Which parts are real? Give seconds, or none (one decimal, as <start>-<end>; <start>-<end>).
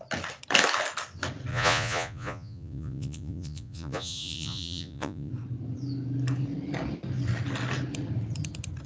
0.0-1.5; 5.3-8.9